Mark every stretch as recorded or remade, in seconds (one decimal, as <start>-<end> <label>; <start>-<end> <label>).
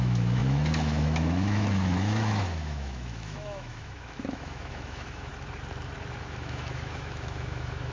0.0-5.3 remade; 5.3-6.2 recorded; 6.2-7.9 remade